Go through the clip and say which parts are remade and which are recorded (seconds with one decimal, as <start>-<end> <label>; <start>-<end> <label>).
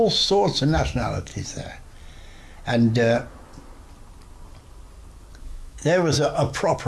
0.0-1.3 remade; 1.3-5.4 recorded; 5.4-6.9 remade